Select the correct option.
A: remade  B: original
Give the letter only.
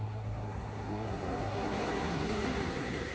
A